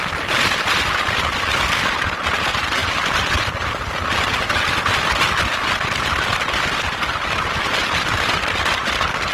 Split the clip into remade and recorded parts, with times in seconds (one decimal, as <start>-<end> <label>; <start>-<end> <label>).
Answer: 0.0-9.3 recorded